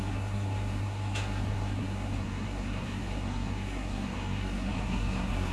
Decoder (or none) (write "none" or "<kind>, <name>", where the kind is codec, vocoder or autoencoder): codec, SNAC